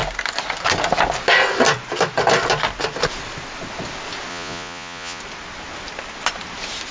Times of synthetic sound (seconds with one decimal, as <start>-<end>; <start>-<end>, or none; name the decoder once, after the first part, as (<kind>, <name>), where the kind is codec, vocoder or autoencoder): 4.3-5.2 (vocoder, Vocos)